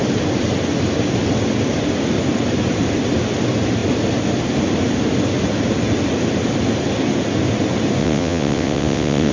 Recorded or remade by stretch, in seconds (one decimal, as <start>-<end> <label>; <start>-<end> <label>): 0.0-8.0 recorded; 8.0-9.3 remade